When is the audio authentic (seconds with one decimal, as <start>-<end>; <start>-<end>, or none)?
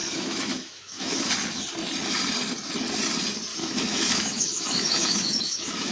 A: 1.3-3.5